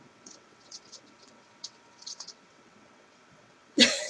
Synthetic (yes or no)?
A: yes